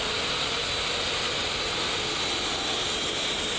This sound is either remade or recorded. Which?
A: recorded